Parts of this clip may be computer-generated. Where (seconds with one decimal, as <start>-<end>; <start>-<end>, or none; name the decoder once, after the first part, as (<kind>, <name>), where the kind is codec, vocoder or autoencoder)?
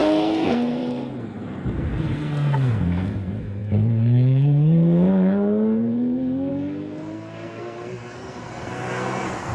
0.0-9.5 (codec, SNAC)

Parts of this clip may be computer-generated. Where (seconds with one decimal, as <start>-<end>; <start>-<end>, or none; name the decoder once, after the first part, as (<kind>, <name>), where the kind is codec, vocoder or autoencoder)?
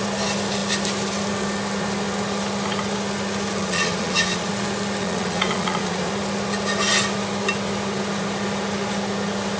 3.6-4.5 (vocoder, Vocos); 5.0-6.1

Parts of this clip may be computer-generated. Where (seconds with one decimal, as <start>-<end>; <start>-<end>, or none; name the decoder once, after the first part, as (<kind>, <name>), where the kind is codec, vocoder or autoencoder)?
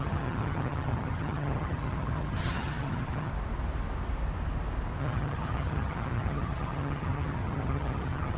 0.0-3.3 (vocoder, HiFi-GAN); 5.0-8.4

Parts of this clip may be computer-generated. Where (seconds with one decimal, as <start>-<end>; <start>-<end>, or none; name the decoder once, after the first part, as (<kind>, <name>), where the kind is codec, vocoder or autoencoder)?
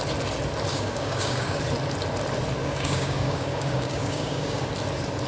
0.7-1.6 (codec, DAC); 2.6-4.7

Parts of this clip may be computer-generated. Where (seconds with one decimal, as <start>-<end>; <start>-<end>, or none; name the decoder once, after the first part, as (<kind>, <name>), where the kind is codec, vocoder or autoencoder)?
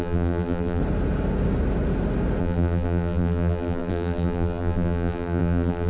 0.0-0.8 (vocoder, BigVGAN v2); 2.4-5.9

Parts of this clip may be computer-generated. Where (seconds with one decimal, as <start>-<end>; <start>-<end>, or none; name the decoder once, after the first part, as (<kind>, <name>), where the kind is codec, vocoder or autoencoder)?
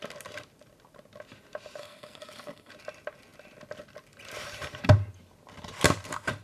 1.8-2.7 (codec, SNAC)